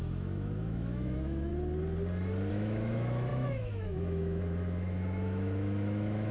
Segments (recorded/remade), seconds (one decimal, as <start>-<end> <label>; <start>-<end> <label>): 0.0-1.5 remade; 1.5-2.5 recorded; 2.5-6.3 remade